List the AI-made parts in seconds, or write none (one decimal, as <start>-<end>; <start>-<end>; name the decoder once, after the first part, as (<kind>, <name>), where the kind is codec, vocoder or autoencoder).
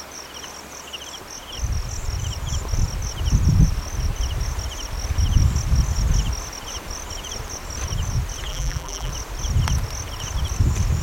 8.5-9.1 (vocoder, BigVGAN v2)